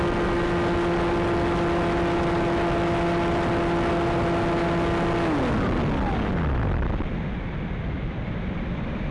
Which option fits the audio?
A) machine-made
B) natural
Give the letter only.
B